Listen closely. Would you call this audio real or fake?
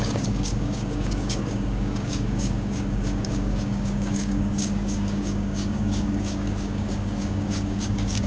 fake